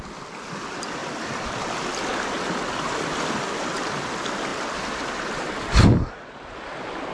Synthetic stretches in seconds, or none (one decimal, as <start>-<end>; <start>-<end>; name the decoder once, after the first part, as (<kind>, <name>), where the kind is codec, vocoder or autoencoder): 1.0-1.5 (vocoder, BigVGAN v2)